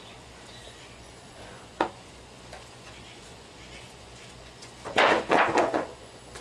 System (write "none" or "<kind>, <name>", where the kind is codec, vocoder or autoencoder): vocoder, Vocos